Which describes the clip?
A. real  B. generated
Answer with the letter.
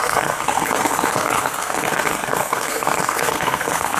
B